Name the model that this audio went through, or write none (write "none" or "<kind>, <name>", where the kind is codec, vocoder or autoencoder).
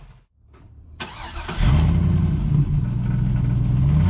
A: none